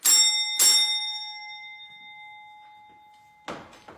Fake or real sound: real